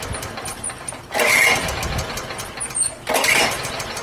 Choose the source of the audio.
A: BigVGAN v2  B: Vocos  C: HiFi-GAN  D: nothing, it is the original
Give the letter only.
D